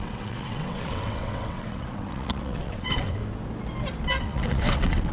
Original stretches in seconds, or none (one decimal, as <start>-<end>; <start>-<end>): 3.2-4.2